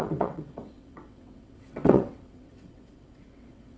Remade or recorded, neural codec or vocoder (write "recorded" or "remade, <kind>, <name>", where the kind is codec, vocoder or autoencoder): remade, vocoder, WaveNeXt